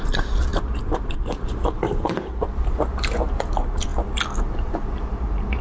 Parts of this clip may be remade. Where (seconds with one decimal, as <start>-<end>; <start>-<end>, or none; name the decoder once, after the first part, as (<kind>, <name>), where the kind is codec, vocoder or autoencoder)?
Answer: 0.0-3.9 (vocoder, BigVGAN v2); 4.4-5.6